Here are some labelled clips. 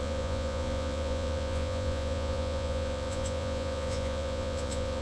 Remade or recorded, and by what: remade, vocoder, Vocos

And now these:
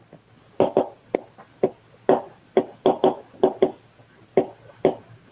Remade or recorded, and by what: recorded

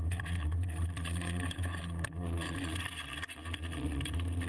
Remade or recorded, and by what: remade, vocoder, Vocos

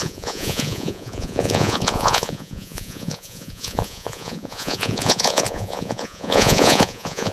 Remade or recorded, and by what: remade, vocoder, Vocos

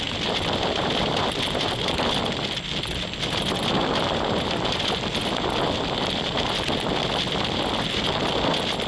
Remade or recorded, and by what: recorded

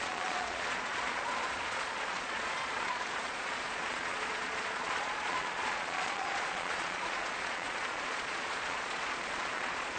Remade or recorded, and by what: remade, vocoder, Vocos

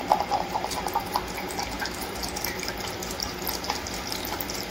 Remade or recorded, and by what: recorded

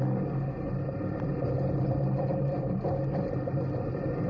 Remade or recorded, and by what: recorded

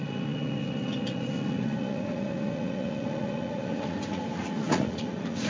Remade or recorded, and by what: remade, vocoder, Vocos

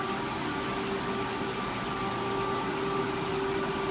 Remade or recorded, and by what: recorded